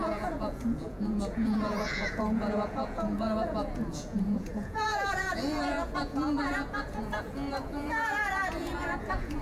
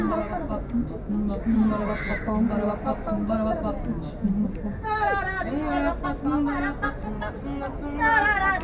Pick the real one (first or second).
second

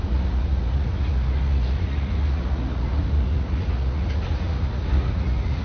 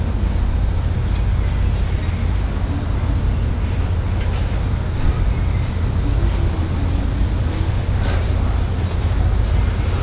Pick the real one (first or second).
second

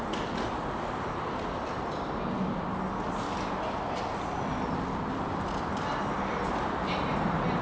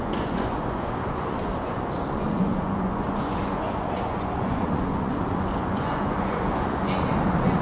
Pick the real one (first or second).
first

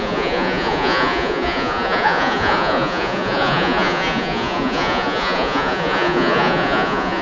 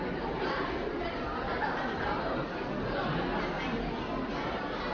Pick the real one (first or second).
second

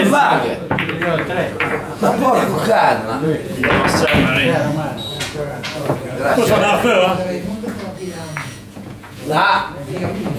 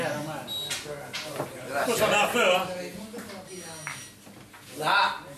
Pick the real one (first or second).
second